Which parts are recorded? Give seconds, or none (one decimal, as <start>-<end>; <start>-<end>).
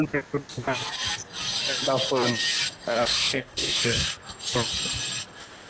0.0-3.1; 4.2-5.7